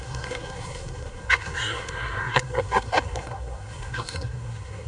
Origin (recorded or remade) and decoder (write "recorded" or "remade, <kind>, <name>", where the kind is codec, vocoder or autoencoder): remade, codec, SNAC